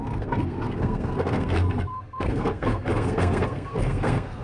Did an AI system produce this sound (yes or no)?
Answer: yes